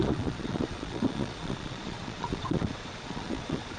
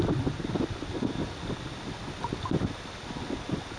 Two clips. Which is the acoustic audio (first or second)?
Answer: second